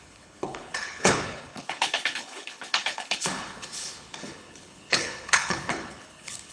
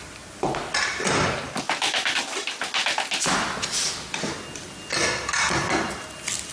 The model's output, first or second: first